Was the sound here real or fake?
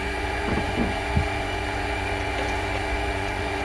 fake